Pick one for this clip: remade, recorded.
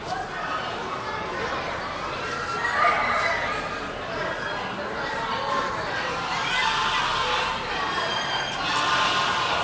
recorded